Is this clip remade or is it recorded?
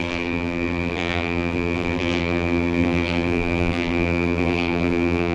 remade